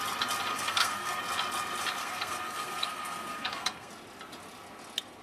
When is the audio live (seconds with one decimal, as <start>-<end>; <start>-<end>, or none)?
0.0-0.5; 1.2-2.0; 3.9-5.2